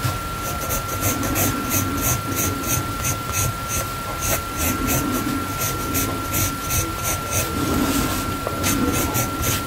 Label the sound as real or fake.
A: real